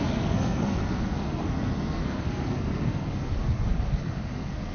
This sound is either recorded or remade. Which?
remade